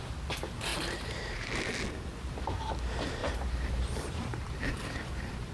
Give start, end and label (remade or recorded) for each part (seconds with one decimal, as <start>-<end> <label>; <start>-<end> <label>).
0.0-0.7 recorded; 0.7-1.5 remade; 1.5-2.1 recorded; 2.1-2.6 remade; 2.6-3.2 recorded; 3.2-5.5 remade